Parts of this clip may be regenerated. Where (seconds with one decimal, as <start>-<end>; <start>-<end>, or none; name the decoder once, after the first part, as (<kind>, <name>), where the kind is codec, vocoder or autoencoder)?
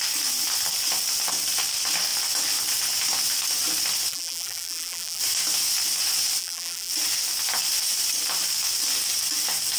4.1-5.2 (vocoder, BigVGAN v2); 6.4-6.9